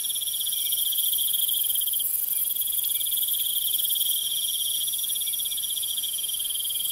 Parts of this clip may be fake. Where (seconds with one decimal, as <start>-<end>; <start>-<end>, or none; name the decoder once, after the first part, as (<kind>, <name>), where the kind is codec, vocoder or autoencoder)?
none